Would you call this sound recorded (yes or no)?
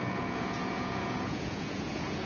no